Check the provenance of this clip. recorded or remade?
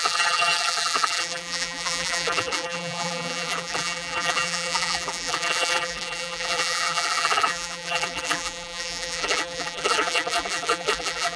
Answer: remade